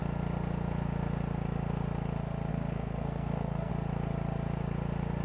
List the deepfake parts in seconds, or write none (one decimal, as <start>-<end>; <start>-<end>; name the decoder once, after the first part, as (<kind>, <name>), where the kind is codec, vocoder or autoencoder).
2.5-3.7 (codec, SNAC)